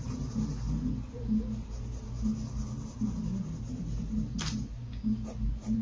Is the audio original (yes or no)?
yes